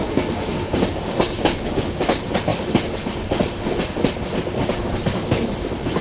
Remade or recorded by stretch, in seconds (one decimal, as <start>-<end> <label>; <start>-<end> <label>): 0.0-2.0 remade; 2.0-6.0 recorded